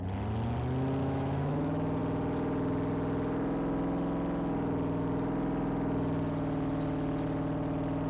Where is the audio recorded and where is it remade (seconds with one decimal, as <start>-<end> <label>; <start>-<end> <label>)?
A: 0.0-1.0 recorded; 1.0-2.0 remade; 2.0-8.1 recorded